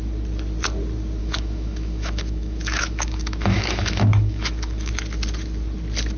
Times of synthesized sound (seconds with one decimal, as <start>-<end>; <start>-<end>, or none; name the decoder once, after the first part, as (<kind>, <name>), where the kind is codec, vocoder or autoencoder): 1.2-4.9 (autoencoder, DAC-VAE)